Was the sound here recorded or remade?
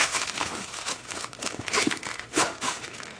remade